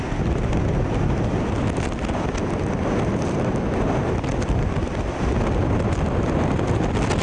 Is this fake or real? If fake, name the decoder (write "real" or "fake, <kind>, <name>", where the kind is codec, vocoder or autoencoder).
real